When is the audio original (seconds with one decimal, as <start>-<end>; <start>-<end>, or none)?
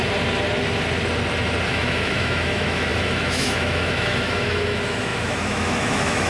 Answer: 0.0-1.7